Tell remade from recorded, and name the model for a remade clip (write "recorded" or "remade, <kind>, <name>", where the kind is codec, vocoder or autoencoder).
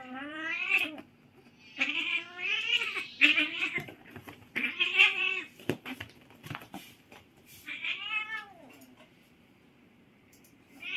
remade, vocoder, BigVGAN v2